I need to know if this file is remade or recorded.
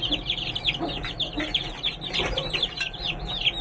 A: remade